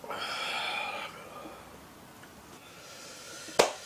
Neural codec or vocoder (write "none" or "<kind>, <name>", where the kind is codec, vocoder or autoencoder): none